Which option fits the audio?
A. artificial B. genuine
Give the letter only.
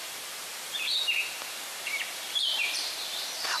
A